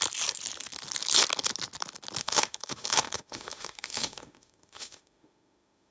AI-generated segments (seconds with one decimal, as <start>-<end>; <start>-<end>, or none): 2.2-5.9